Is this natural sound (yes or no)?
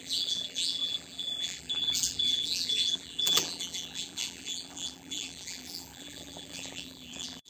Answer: no